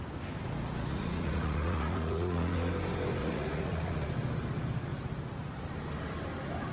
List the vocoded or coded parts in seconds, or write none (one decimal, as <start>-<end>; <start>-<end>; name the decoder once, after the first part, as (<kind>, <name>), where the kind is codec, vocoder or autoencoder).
0.8-2.7 (vocoder, Vocos); 3.2-4.1